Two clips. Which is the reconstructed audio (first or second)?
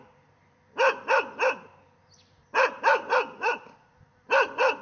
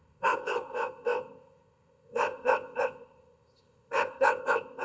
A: second